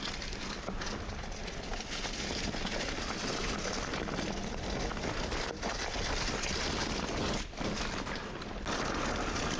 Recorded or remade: recorded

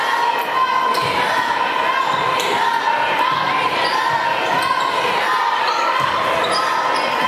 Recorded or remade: recorded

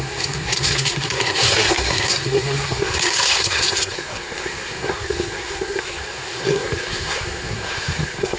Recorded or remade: remade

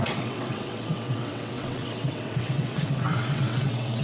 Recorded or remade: remade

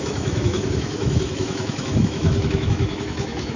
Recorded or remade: remade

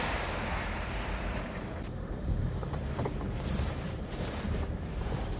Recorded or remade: remade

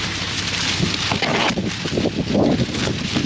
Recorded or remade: recorded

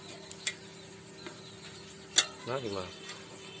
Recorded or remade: recorded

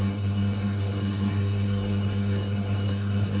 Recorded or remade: remade